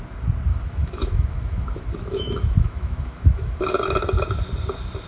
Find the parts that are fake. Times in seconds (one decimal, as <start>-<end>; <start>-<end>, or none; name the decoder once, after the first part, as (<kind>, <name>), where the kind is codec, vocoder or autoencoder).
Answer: 0.5-3.6 (autoencoder, DAC-VAE)